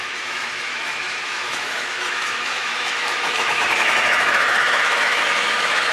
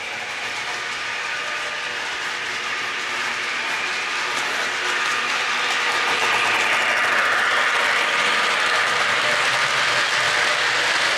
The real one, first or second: second